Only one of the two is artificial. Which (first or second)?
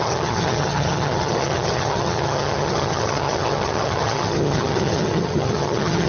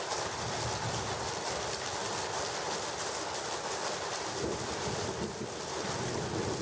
first